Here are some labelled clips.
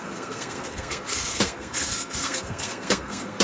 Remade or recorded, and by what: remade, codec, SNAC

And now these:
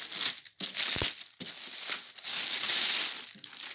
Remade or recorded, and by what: recorded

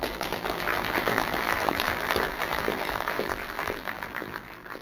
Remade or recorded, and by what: remade, vocoder, BigVGAN v2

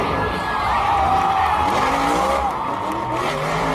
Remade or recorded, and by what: remade, vocoder, BigVGAN v2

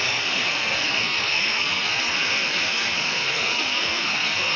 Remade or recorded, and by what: remade, codec, SNAC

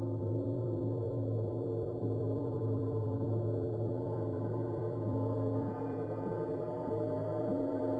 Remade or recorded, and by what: remade, vocoder, BigVGAN v2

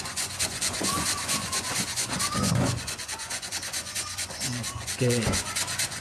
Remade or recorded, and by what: remade, vocoder, Vocos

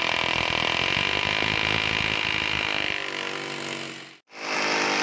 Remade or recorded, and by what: recorded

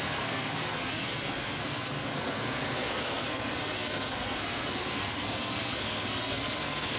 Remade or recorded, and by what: remade, codec, SNAC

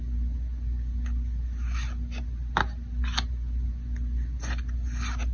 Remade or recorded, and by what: recorded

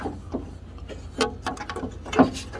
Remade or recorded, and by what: recorded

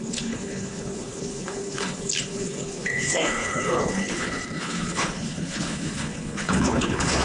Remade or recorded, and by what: remade, codec, HILCodec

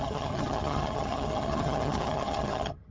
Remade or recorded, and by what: remade, vocoder, HiFi-GAN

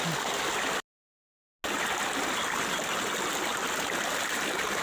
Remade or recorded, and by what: recorded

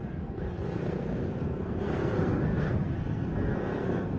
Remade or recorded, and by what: remade, codec, SNAC